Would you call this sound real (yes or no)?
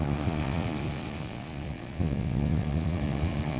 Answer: no